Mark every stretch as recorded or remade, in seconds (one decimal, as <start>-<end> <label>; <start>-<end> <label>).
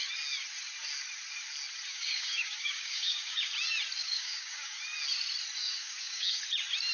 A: 0.0-1.9 recorded; 1.9-3.5 remade; 3.5-4.0 recorded; 4.0-4.8 remade; 4.8-5.6 recorded; 5.6-6.4 remade; 6.4-6.9 recorded